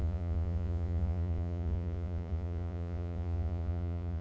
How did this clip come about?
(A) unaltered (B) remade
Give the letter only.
B